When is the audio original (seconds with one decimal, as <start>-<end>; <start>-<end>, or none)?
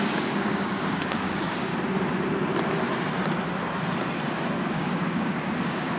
1.7-4.7